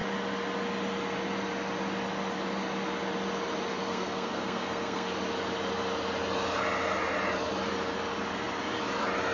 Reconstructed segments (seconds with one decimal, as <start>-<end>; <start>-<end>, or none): 3.7-5.1